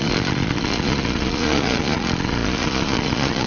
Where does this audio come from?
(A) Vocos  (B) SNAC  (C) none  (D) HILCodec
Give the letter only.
A